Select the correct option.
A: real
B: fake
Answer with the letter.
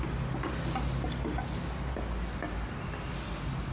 A